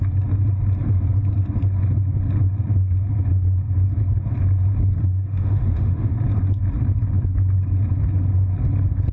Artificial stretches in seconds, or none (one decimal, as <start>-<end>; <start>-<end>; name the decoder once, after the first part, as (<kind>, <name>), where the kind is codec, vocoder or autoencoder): 5.0-6.1 (autoencoder, DAC-VAE)